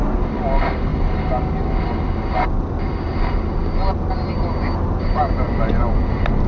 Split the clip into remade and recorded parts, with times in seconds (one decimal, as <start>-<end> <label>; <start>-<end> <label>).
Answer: 0.0-6.5 recorded